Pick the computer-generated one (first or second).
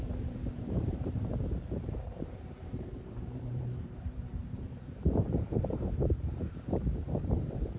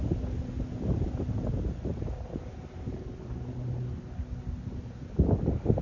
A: first